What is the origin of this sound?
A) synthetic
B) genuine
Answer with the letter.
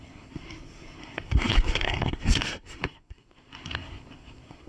A